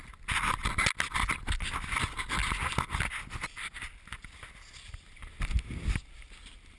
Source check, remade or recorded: recorded